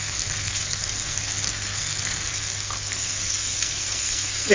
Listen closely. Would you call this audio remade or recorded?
remade